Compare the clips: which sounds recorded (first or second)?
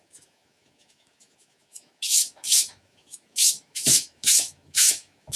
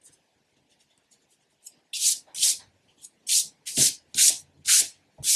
second